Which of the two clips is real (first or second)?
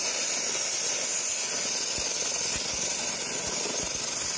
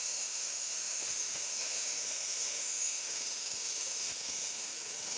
first